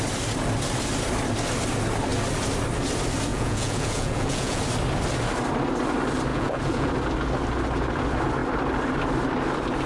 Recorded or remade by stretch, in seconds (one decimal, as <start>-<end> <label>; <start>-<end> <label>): 0.0-3.3 recorded; 3.3-4.6 remade; 4.6-6.3 recorded; 6.3-6.9 remade; 6.9-9.9 recorded